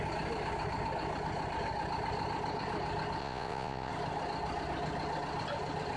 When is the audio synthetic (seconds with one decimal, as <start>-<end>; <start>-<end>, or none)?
3.2-3.9